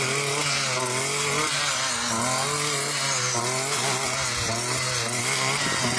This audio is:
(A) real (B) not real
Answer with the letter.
A